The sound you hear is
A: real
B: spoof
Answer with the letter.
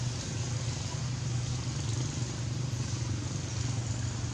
A